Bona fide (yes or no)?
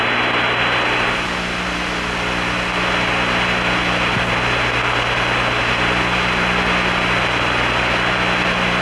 yes